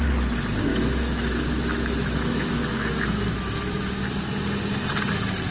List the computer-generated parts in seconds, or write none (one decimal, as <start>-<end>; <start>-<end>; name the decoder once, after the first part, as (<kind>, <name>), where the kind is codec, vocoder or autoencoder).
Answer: 0.7-3.9 (autoencoder, DAC-VAE)